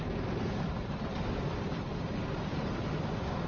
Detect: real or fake real